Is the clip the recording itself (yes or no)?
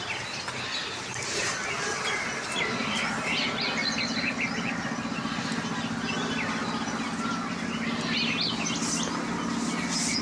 yes